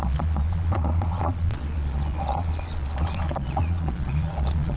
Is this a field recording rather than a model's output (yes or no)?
no